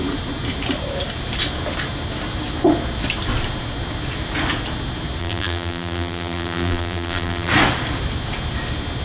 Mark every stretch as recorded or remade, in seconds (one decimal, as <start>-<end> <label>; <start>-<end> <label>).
0.0-5.2 recorded; 5.2-7.5 remade; 7.5-9.0 recorded